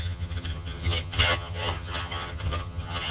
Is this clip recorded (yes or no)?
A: no